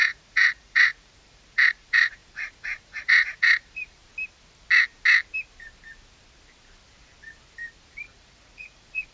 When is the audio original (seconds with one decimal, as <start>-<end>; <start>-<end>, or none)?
4.0-8.1